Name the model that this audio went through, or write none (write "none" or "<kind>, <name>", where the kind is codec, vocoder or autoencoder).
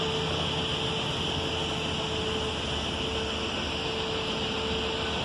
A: none